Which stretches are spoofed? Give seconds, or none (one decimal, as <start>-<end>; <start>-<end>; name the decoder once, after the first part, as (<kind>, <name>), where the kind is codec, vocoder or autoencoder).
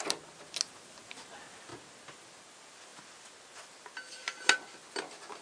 none